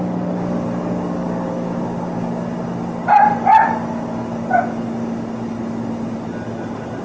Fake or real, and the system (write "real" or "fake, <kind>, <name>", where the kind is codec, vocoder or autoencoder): real